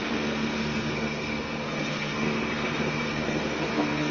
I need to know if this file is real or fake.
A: fake